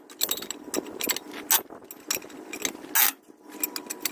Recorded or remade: recorded